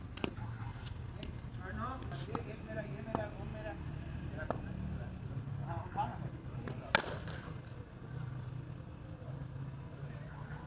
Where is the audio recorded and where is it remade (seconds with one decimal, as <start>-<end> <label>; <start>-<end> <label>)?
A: 0.0-10.7 recorded